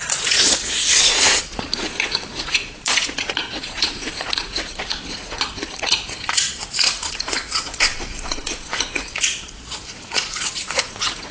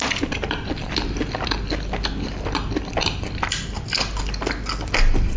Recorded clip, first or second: second